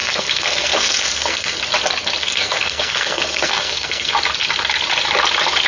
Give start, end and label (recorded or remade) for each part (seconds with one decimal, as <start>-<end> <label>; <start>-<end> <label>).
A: 0.0-1.6 remade; 1.6-2.2 recorded; 2.2-4.1 remade; 4.1-5.7 recorded